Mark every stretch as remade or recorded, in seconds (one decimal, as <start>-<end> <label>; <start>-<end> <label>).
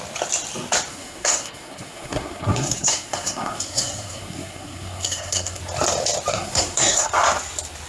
0.0-0.9 recorded; 0.9-5.6 remade; 5.6-6.3 recorded; 6.3-7.1 remade; 7.1-7.9 recorded